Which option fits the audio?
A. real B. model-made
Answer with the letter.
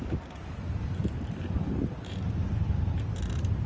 B